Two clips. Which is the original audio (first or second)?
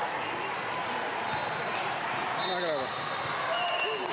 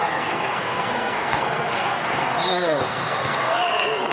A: first